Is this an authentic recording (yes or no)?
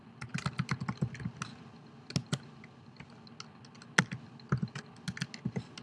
yes